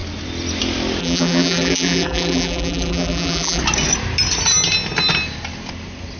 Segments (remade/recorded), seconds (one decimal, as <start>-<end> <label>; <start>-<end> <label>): 0.0-1.0 recorded; 1.0-3.6 remade; 3.6-6.2 recorded